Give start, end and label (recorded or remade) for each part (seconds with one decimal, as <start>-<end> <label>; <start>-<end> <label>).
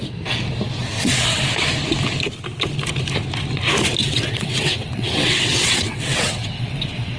0.0-0.8 recorded; 0.8-1.4 remade; 1.4-4.0 recorded; 4.0-7.2 remade